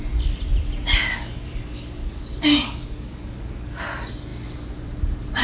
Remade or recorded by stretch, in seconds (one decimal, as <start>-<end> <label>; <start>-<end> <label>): 0.0-1.1 recorded; 1.1-3.8 remade; 3.8-5.4 recorded